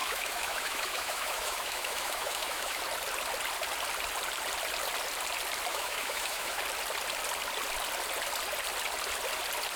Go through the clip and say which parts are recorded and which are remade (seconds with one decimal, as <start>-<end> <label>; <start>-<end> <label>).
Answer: 0.0-2.8 remade; 2.8-5.7 recorded; 5.7-6.6 remade; 6.6-9.8 recorded